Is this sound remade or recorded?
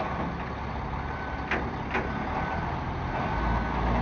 recorded